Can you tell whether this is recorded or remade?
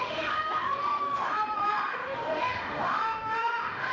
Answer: remade